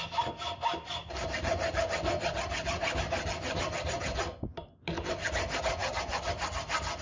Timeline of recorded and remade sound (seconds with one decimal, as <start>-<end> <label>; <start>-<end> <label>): 0.0-7.0 recorded

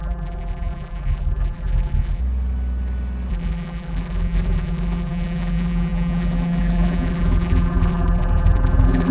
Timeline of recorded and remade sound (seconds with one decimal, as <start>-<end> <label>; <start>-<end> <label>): 0.0-2.2 remade; 2.2-3.3 recorded; 3.3-9.1 remade

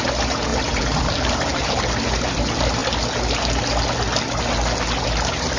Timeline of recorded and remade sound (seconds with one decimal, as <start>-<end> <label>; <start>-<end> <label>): 0.0-2.8 remade; 2.8-5.0 recorded; 5.0-5.6 remade

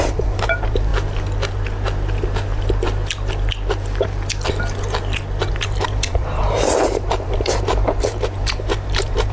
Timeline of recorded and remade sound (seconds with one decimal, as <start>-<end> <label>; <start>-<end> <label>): 0.0-0.9 remade; 0.9-5.5 recorded; 5.5-9.3 remade

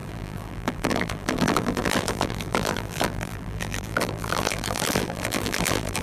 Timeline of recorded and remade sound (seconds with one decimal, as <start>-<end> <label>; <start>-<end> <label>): 0.0-6.0 remade

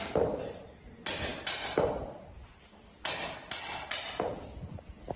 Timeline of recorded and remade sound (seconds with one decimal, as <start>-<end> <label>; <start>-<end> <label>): 0.0-1.3 remade; 1.3-4.4 recorded; 4.4-5.2 remade

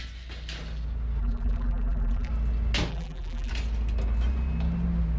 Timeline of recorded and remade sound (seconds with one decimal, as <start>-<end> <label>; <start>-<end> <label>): 0.0-1.2 recorded; 1.2-2.3 remade; 2.3-2.9 recorded; 2.9-3.5 remade; 3.5-5.2 recorded

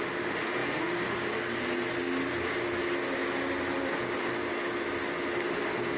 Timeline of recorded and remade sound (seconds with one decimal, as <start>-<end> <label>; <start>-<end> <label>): 0.0-6.0 recorded